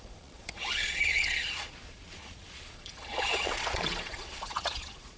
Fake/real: fake